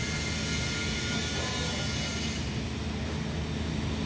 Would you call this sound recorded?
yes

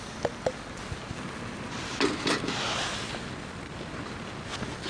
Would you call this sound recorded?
yes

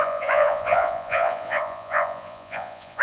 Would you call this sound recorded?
no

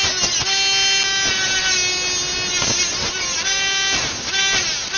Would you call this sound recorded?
yes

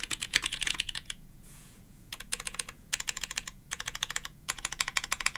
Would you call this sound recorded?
no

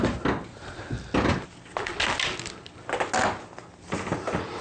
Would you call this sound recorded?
yes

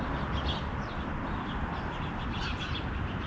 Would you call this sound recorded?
yes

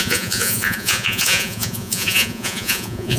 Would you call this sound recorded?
no